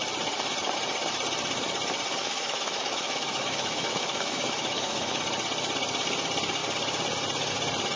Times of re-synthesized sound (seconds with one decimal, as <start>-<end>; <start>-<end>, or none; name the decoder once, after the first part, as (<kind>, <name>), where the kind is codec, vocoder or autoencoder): 2.2-5.2 (autoencoder, DAC-VAE)